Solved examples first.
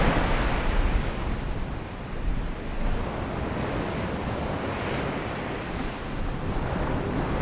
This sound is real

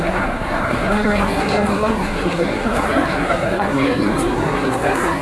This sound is fake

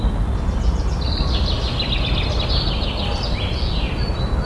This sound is real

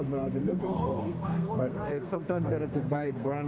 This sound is fake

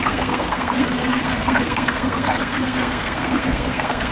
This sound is fake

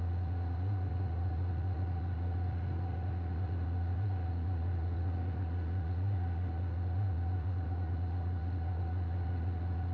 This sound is fake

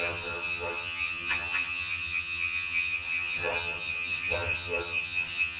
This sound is fake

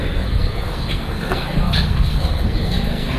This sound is fake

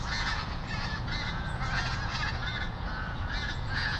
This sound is fake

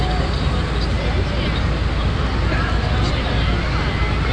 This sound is real